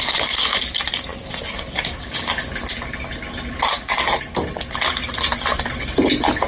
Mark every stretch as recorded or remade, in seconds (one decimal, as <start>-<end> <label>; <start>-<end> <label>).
0.0-6.5 recorded

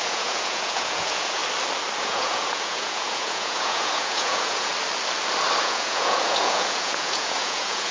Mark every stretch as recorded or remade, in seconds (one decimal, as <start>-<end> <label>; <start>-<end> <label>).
0.0-1.4 remade; 1.4-2.0 recorded; 2.0-4.7 remade; 4.7-5.6 recorded; 5.6-7.9 remade

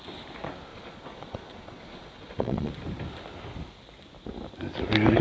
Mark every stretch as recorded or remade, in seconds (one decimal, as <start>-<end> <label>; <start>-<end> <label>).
0.0-0.7 recorded; 0.7-2.7 remade; 2.7-5.2 recorded

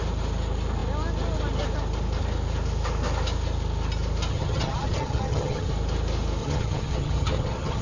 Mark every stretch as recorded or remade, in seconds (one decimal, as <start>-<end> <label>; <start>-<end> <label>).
0.0-4.3 recorded; 4.3-5.7 remade; 5.7-6.4 recorded; 6.4-7.8 remade